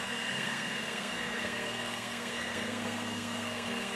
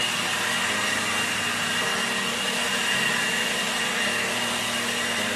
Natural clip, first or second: second